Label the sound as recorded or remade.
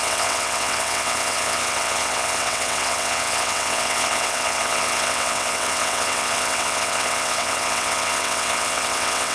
remade